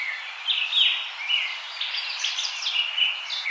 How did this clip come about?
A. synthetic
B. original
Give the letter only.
B